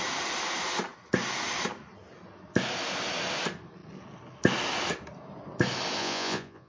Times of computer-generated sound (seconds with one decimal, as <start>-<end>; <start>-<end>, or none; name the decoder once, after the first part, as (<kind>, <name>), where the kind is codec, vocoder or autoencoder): 6.0-6.7 (vocoder, Vocos)

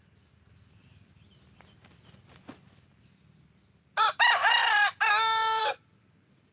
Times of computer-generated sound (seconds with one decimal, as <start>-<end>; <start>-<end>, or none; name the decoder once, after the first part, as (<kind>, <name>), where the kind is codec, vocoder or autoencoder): none

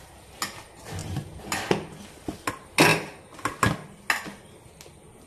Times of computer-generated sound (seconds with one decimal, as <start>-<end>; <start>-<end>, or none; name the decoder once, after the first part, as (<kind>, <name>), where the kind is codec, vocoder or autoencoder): none

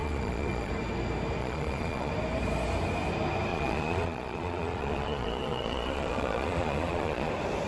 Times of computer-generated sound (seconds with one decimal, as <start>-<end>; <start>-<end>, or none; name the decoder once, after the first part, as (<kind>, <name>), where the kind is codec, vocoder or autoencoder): 0.0-0.7 (vocoder, Vocos); 1.4-2.1; 3.5-7.3

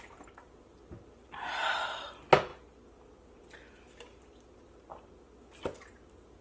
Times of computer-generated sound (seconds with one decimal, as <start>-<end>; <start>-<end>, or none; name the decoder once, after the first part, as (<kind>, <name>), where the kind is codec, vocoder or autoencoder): none

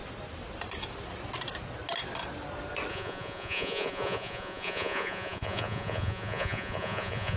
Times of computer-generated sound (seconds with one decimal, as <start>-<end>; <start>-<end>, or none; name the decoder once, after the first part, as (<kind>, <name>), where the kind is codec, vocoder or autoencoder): 2.9-7.4 (vocoder, Vocos)

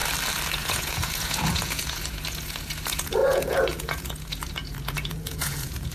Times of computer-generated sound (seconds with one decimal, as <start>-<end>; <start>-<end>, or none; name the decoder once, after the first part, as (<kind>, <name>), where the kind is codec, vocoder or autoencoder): 0.5-5.9 (vocoder, Vocos)